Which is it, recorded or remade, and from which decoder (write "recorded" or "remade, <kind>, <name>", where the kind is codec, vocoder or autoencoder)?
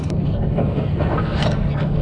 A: remade, codec, SNAC